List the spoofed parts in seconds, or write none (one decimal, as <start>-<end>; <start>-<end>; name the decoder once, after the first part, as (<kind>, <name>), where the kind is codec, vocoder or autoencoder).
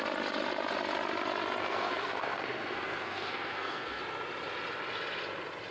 1.6-4.0 (codec, SNAC)